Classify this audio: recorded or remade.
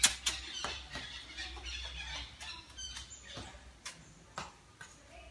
recorded